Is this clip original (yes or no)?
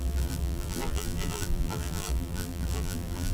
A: no